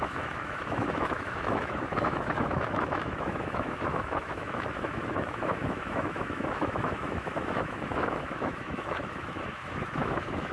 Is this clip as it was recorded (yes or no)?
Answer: no